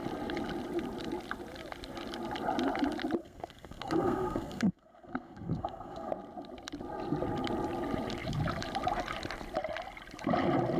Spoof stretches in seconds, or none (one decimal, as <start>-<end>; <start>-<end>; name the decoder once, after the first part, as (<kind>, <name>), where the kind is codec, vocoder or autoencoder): 3.2-6.1 (codec, SNAC)